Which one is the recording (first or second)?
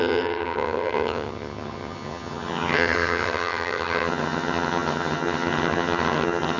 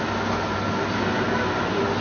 second